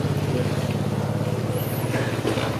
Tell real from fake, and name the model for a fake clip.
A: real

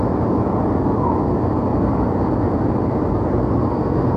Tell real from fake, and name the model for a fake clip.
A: real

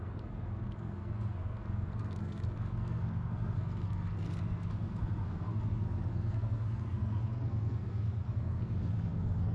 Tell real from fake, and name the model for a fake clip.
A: fake, codec, SNAC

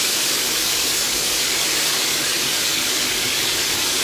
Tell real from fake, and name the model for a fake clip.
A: fake, codec, DAC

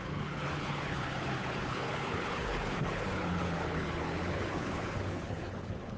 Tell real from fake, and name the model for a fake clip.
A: fake, codec, HILCodec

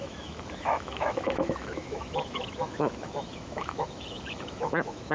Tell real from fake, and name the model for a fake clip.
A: fake, autoencoder, DAC-VAE